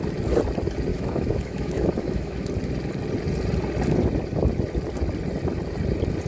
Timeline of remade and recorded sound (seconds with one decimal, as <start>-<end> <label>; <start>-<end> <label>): 0.0-0.9 recorded; 0.9-2.5 remade; 2.5-6.3 recorded